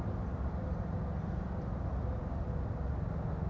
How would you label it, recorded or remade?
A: recorded